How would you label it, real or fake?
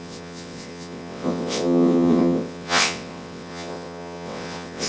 fake